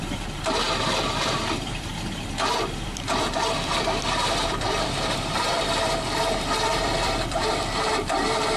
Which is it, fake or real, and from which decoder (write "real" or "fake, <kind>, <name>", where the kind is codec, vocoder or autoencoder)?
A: fake, vocoder, BigVGAN v2